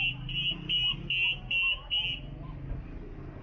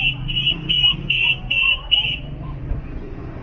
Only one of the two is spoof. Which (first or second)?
second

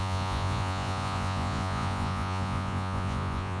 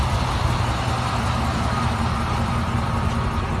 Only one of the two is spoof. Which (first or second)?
first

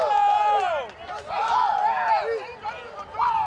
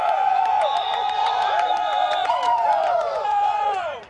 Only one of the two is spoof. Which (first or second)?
second